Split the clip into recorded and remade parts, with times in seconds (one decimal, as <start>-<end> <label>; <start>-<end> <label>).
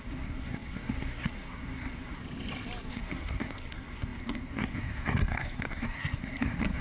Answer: 0.0-2.2 remade; 2.2-2.9 recorded; 2.9-6.8 remade